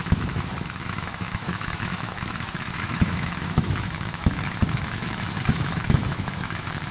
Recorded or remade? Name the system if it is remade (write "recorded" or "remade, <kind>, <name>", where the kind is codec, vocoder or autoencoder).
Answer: remade, autoencoder, DAC-VAE